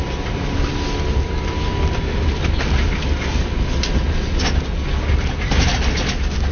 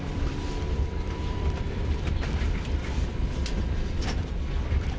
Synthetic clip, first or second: second